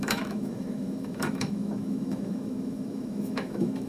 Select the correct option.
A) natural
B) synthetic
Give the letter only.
B